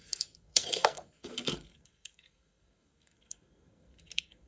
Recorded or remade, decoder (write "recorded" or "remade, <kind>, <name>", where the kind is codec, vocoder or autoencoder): remade, codec, SNAC